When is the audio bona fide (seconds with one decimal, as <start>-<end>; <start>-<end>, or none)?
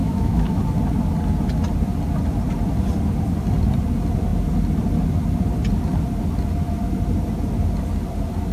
0.6-8.5